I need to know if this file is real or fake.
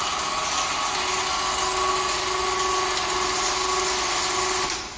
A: real